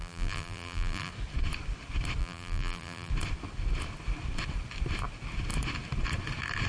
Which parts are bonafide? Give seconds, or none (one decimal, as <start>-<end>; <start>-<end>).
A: 1.1-2.2; 3.1-6.7